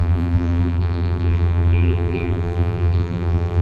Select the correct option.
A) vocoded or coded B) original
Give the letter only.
A